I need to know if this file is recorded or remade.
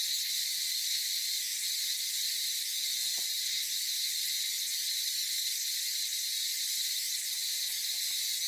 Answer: recorded